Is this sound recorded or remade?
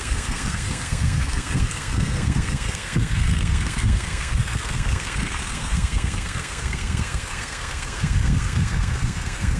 remade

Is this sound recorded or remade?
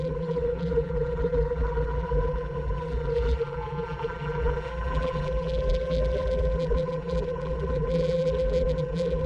remade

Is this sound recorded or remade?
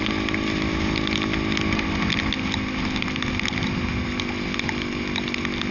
recorded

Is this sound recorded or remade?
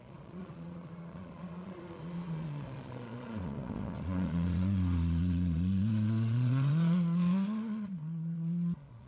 remade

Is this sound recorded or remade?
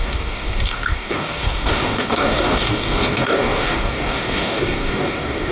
remade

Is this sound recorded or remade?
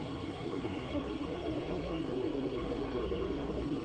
remade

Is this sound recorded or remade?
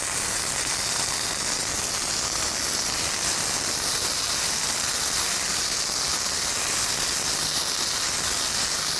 recorded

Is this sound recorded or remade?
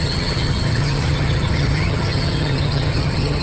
remade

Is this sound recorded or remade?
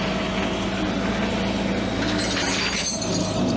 recorded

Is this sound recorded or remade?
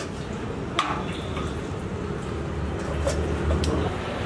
recorded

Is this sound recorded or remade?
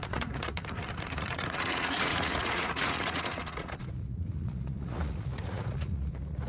remade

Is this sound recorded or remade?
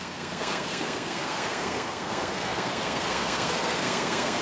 remade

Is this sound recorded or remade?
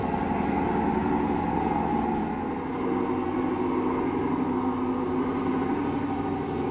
recorded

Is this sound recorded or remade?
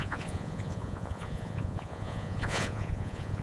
remade